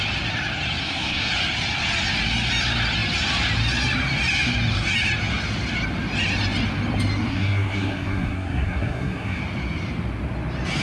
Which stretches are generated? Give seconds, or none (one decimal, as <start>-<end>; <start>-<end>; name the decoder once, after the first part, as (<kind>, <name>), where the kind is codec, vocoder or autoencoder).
0.8-1.3 (codec, SNAC); 7.3-9.4